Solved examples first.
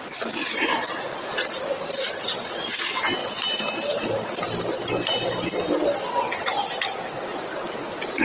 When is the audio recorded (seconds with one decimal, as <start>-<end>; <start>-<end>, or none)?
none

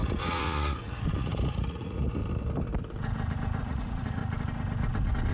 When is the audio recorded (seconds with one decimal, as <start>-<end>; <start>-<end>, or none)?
2.2-3.6; 4.2-5.3

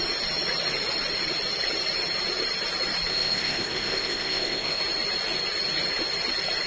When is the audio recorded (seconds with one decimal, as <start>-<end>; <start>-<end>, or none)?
0.0-3.1; 4.8-6.7

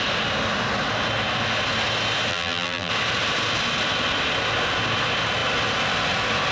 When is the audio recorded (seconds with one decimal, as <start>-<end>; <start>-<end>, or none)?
0.0-2.3; 2.9-6.5

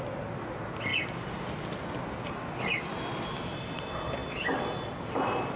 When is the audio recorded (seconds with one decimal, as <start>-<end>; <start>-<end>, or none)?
0.0-5.6

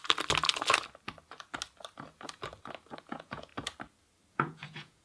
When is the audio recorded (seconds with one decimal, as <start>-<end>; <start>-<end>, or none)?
0.0-3.0; 3.5-4.3